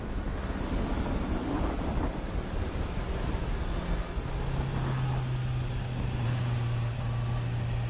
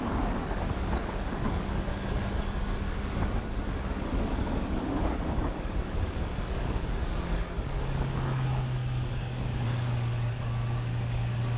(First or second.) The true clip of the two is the first